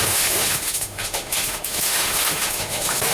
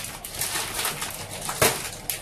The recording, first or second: second